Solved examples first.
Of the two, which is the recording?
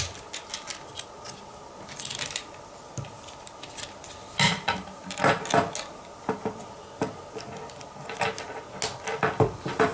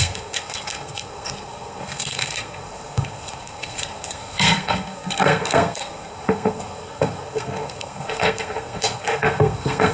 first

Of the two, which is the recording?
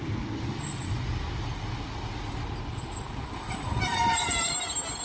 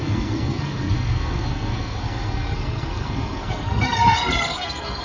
first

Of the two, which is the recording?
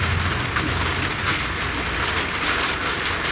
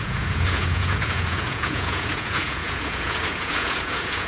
first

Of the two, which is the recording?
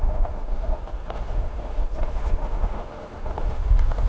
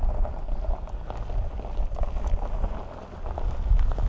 second